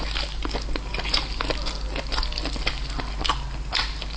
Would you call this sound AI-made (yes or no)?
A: no